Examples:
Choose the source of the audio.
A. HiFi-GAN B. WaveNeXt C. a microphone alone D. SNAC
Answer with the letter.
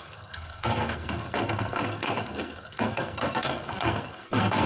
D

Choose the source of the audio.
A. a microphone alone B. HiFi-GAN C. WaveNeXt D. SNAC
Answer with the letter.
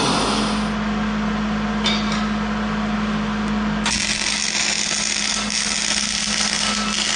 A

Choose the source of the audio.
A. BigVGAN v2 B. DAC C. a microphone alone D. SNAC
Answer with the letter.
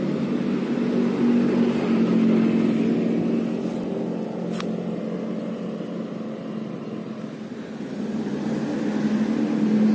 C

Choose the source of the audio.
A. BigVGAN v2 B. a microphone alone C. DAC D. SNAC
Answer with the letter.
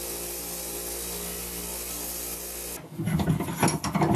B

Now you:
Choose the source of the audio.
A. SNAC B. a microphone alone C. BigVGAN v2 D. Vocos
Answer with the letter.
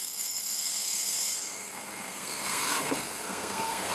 A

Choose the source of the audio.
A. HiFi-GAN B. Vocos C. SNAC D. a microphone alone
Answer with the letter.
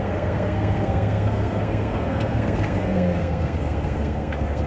C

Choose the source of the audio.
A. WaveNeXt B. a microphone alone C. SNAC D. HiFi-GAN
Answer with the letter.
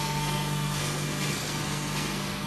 C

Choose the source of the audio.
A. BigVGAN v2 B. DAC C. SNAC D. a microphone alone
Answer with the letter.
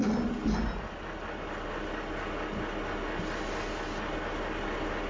D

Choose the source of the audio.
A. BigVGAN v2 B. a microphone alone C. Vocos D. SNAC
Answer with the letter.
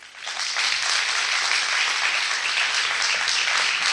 B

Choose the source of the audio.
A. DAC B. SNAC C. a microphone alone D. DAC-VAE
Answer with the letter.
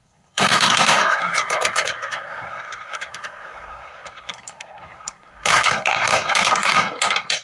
B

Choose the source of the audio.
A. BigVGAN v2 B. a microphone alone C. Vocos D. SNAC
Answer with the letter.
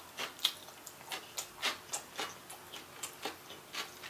B